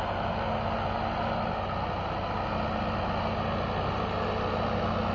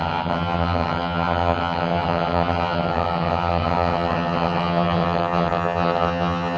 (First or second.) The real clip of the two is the first